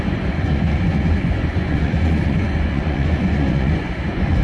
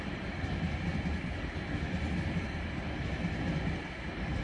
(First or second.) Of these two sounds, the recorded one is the second